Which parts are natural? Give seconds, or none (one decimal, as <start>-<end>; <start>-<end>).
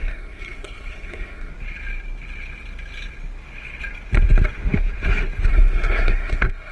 1.5-5.5